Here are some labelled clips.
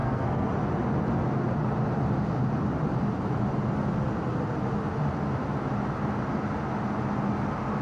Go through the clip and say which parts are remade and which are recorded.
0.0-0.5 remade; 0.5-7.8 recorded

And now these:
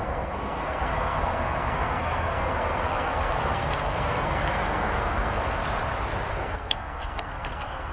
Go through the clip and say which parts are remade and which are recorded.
0.0-5.6 remade; 5.6-6.3 recorded; 6.3-7.9 remade

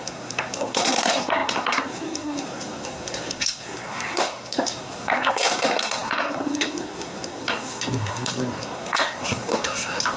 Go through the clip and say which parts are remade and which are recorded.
0.0-10.2 remade

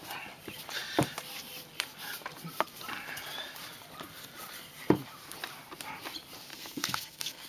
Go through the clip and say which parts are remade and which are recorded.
0.0-6.5 recorded; 6.5-7.5 remade

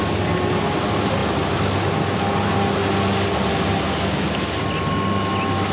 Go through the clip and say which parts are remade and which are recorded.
0.0-5.7 recorded